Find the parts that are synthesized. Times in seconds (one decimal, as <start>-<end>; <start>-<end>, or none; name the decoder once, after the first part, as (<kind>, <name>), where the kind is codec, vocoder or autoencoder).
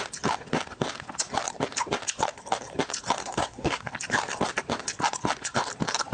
3.2-3.9 (codec, SNAC)